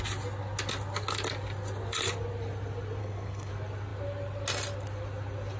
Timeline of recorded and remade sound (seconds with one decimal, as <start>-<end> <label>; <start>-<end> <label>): 0.0-3.0 recorded; 3.0-3.5 remade; 3.5-5.6 recorded